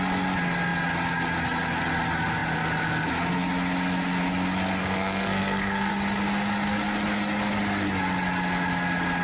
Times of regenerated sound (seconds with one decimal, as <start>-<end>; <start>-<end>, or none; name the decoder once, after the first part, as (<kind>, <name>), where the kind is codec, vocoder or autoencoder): 4.8-5.9 (codec, SNAC)